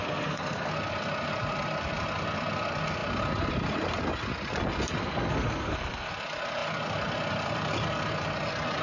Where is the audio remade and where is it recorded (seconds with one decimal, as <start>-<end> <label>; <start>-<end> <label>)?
0.0-0.7 remade; 0.7-5.0 recorded; 5.0-6.1 remade; 6.1-8.8 recorded